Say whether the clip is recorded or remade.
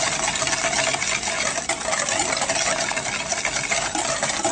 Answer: recorded